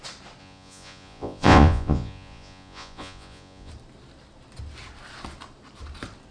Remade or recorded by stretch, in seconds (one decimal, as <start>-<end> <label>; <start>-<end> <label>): 0.0-0.4 recorded; 0.4-3.7 remade; 3.7-6.3 recorded